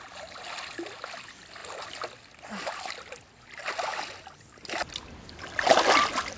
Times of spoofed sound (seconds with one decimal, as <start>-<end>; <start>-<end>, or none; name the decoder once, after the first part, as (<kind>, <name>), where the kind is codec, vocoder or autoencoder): none

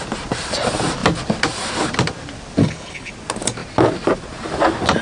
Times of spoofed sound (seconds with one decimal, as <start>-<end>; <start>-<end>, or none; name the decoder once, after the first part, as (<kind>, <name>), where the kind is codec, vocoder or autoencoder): 2.6-3.1 (codec, HILCodec)

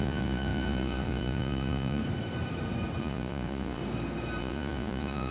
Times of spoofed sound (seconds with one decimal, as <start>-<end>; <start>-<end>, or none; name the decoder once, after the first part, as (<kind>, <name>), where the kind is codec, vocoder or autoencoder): 0.0-2.0 (vocoder, Vocos); 3.0-3.8; 4.4-5.3

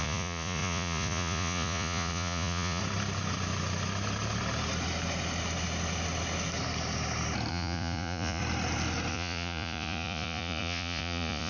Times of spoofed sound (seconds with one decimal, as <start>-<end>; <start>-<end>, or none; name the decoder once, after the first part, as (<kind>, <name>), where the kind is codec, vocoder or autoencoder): 0.0-2.8 (vocoder, Vocos); 7.5-8.4; 9.1-11.5

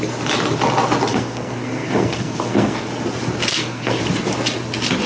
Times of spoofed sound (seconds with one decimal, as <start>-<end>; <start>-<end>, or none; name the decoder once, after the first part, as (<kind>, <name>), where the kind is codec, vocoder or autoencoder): 1.1-2.9 (codec, SNAC); 3.5-4.0